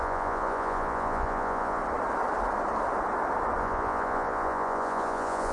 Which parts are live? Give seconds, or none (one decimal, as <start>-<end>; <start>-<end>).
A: 1.8-3.6